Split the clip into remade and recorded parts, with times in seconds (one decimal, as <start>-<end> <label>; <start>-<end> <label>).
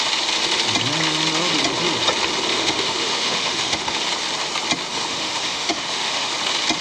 0.0-2.5 recorded; 2.5-4.0 remade; 4.0-4.9 recorded; 4.9-6.3 remade; 6.3-6.8 recorded